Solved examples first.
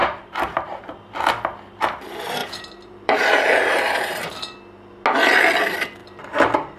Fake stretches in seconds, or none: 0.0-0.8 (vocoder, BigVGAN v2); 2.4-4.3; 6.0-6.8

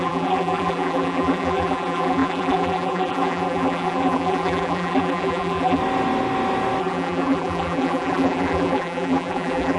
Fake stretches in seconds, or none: 0.0-5.8 (vocoder, BigVGAN v2); 6.8-9.8

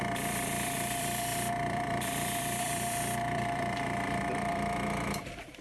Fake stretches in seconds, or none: 0.0-5.6 (vocoder, BigVGAN v2)

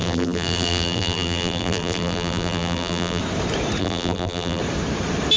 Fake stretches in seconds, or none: 0.0-3.2 (vocoder, BigVGAN v2); 3.8-4.6

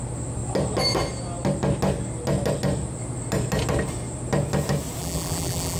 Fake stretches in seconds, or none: 5.0-5.8 (vocoder, BigVGAN v2)

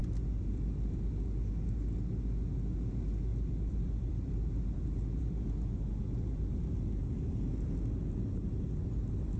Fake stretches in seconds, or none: 0.0-1.1 (vocoder, BigVGAN v2); 3.3-5.3